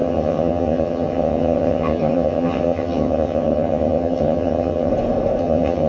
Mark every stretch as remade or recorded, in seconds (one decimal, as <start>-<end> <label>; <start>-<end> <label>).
0.0-4.9 remade; 4.9-5.4 recorded; 5.4-5.9 remade